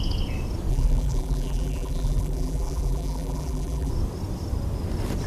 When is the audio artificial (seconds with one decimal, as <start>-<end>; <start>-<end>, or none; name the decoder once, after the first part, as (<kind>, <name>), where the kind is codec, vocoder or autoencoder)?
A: 0.7-3.9 (vocoder, BigVGAN v2)